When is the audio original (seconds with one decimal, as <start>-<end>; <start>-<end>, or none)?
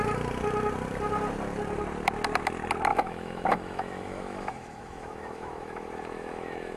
0.0-2.9